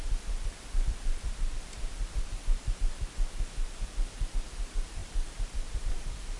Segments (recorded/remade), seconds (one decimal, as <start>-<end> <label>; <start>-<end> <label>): 0.0-6.4 remade

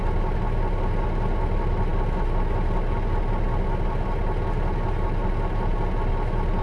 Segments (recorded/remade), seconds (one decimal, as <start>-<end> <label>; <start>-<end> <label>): 0.0-6.6 recorded